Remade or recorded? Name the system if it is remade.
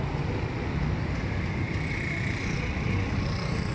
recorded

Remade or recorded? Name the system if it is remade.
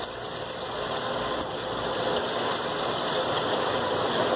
recorded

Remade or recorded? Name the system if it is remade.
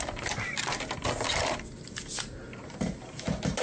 recorded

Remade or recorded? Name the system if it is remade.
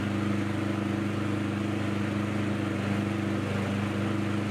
recorded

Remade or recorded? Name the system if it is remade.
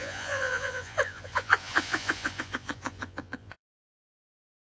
remade, vocoder, Vocos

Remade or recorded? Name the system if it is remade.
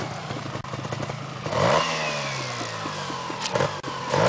recorded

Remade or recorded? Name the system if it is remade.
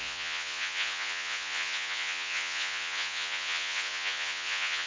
remade, vocoder, Vocos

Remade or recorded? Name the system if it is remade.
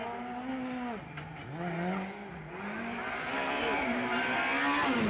recorded